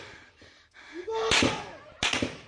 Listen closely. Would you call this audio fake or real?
real